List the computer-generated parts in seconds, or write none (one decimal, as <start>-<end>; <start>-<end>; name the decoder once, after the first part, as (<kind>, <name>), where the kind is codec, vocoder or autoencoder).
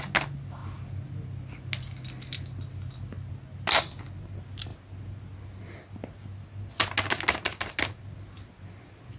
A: none